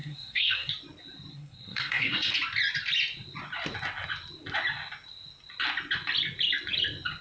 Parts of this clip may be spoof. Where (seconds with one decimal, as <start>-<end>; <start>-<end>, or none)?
0.0-0.7; 1.3-2.3